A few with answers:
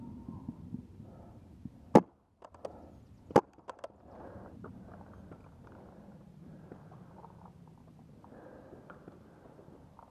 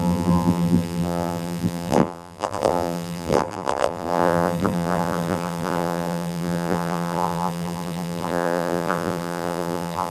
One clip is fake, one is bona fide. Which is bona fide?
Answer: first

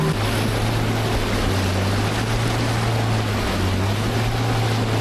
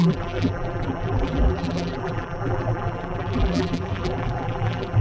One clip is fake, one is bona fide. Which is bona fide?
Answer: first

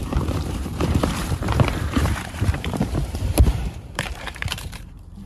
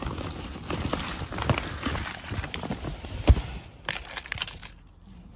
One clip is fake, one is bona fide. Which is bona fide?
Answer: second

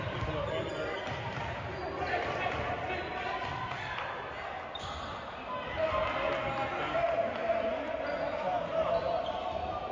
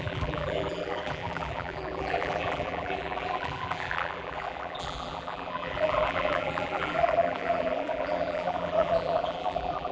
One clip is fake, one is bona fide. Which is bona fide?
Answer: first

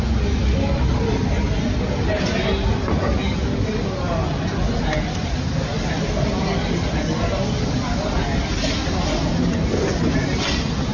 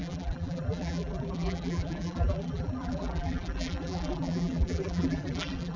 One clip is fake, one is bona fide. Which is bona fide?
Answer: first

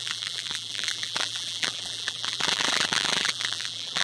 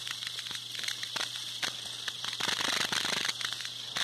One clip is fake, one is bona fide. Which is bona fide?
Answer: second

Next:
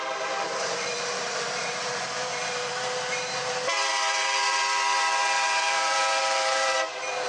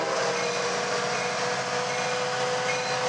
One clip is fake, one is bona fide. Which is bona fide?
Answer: second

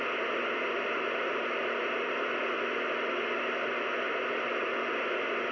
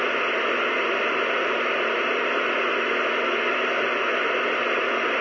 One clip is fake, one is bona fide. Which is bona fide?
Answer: first